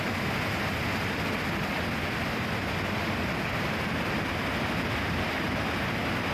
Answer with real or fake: real